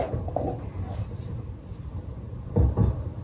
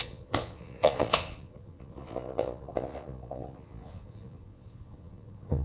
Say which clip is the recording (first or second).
first